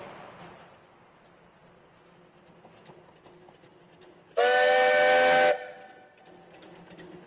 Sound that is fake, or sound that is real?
real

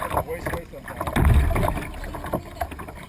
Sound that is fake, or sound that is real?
real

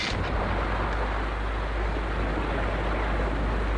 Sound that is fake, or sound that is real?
real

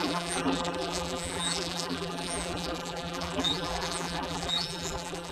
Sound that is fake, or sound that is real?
fake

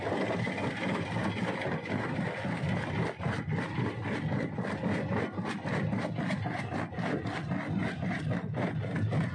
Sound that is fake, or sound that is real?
real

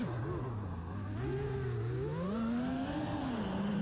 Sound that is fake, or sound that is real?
real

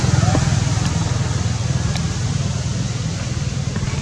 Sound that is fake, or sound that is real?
real